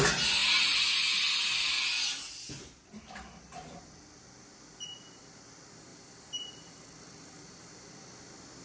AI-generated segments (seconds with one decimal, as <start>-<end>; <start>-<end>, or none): 5.9-7.9